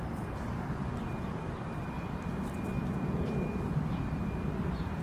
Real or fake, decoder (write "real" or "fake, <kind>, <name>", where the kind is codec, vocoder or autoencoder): fake, vocoder, BigVGAN v2